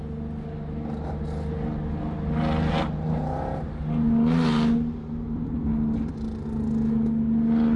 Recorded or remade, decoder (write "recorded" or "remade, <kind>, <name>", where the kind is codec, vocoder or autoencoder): recorded